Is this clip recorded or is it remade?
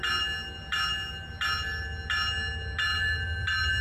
recorded